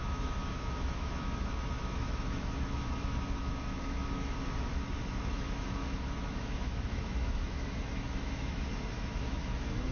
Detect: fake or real fake